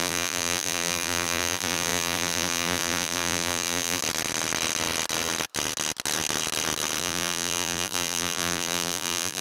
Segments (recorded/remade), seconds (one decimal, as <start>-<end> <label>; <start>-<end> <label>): 0.0-4.0 remade; 4.0-7.0 recorded; 7.0-9.4 remade